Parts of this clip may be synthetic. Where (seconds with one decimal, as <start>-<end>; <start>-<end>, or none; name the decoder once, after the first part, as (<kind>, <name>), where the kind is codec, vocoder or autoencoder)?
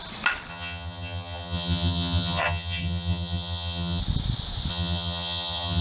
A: 0.5-4.0 (vocoder, HiFi-GAN); 4.7-5.8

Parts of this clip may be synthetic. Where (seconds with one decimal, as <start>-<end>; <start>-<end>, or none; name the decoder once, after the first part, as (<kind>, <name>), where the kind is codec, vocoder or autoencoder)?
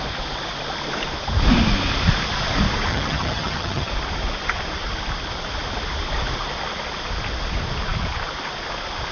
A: 2.9-3.9 (vocoder, HiFi-GAN)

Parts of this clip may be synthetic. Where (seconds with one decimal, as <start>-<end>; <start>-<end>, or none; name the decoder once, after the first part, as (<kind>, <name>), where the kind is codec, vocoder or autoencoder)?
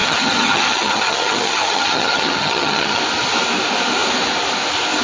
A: 0.0-3.0 (vocoder, HiFi-GAN)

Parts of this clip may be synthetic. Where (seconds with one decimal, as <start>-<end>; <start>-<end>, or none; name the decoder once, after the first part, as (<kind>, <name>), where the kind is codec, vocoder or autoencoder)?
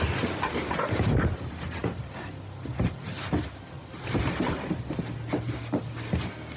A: none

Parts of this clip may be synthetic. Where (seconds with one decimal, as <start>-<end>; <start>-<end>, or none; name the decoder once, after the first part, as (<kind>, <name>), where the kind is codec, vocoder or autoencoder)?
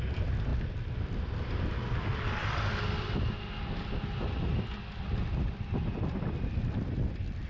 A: none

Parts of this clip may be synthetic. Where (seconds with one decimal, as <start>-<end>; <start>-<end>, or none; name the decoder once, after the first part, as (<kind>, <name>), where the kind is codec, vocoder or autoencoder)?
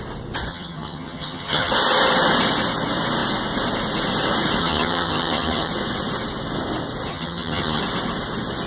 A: 0.5-1.7 (vocoder, HiFi-GAN); 4.6-5.7; 7.1-7.8